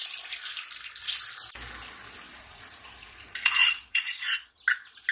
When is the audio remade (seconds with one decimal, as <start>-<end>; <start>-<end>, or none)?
2.3-4.6